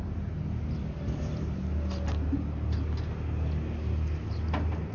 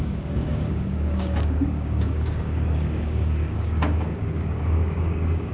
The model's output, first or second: second